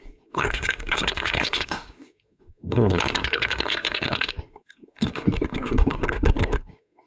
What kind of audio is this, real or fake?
fake